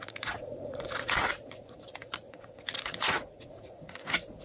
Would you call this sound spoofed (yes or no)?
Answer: yes